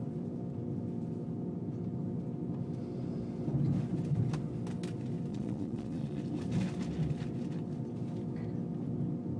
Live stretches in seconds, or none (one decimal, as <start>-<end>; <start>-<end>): 0.0-5.3; 6.2-9.4